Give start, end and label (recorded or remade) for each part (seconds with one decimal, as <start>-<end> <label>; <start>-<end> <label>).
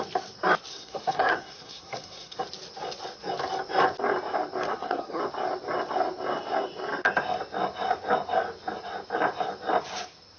0.0-0.7 recorded; 0.7-2.4 remade; 2.4-4.7 recorded; 4.7-5.2 remade; 5.2-10.4 recorded